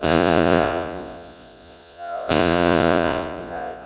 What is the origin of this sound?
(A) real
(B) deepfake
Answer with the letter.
B